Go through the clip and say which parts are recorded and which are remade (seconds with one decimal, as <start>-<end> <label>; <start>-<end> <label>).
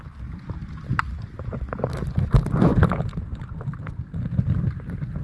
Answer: 0.0-5.2 recorded